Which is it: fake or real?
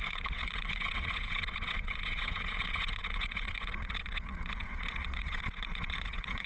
fake